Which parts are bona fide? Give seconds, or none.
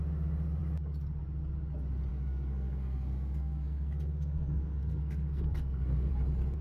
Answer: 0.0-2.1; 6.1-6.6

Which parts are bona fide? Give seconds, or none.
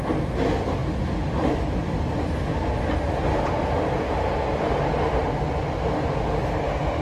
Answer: 0.0-7.0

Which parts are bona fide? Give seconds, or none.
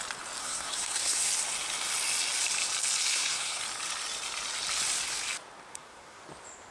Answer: 0.0-0.4; 1.3-3.1; 3.6-5.7; 6.2-6.7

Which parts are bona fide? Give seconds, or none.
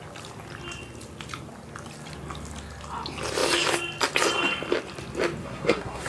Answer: 0.0-5.4